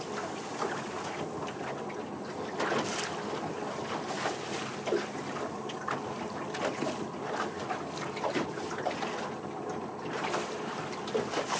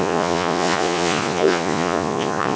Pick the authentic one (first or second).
first